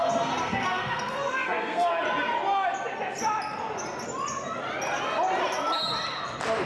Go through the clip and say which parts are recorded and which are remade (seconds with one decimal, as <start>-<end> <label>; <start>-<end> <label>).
0.0-1.9 remade; 1.9-6.7 recorded